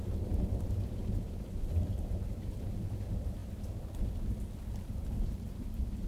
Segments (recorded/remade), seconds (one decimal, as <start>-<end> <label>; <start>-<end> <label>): 0.0-3.4 remade; 3.4-5.0 recorded; 5.0-6.1 remade